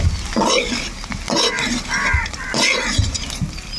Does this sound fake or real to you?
real